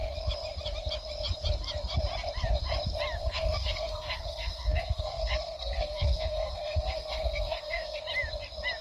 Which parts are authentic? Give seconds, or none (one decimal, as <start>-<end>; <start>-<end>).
0.0-3.2; 8.0-8.8